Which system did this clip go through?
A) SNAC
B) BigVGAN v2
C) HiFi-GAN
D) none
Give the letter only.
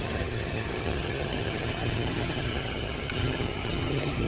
C